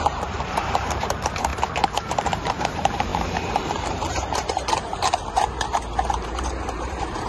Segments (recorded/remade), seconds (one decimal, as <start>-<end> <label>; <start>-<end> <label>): 0.0-4.9 remade; 4.9-5.6 recorded; 5.6-7.3 remade